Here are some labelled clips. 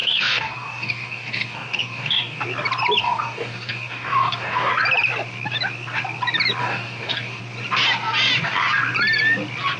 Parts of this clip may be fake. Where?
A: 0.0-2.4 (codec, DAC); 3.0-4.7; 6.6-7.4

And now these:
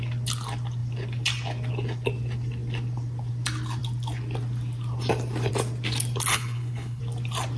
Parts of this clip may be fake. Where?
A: 6.3-7.0 (codec, HILCodec)

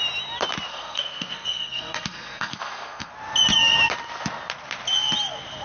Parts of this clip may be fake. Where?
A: 0.7-3.1 (codec, SNAC)